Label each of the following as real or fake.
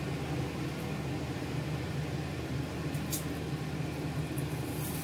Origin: real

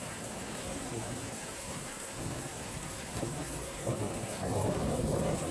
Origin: fake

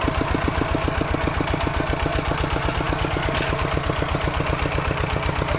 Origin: real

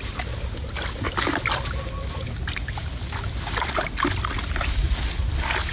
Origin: real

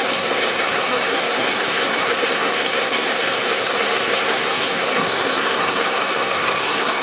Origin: fake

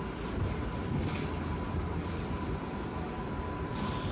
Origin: fake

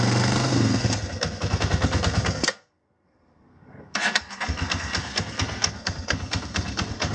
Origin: fake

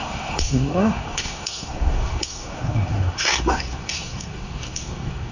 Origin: fake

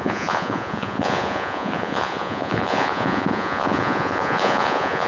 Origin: fake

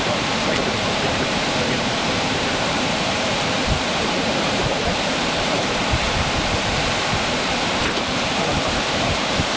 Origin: fake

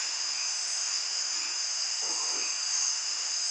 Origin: fake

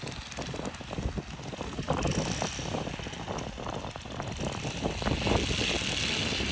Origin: real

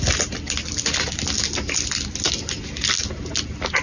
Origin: real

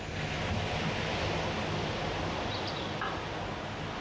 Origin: real